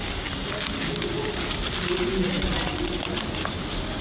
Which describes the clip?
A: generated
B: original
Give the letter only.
B